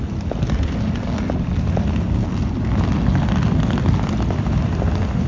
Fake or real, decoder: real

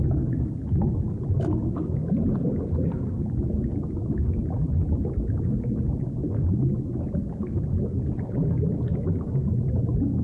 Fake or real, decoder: real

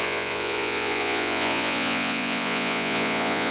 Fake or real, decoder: fake, vocoder, Vocos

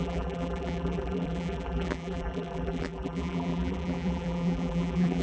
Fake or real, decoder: fake, vocoder, BigVGAN v2